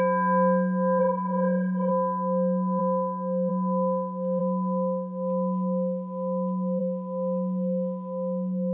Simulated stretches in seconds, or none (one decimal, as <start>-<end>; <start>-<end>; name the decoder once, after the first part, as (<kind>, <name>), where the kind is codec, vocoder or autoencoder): 1.0-1.9 (autoencoder, DAC-VAE)